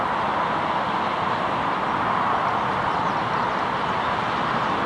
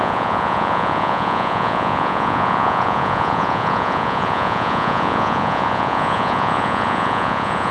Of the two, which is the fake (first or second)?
second